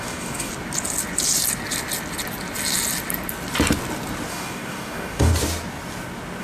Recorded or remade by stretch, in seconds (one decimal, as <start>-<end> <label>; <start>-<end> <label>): 0.0-0.5 remade; 0.5-4.3 recorded; 4.3-5.3 remade; 5.3-6.4 recorded